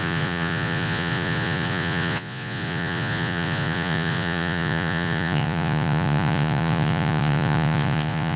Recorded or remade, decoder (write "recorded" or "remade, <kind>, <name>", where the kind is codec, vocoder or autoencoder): remade, vocoder, Vocos